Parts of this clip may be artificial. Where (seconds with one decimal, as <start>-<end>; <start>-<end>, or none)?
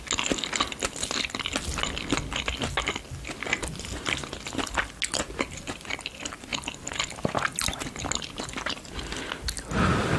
none